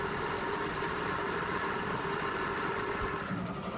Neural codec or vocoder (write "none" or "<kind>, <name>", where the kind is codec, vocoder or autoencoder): none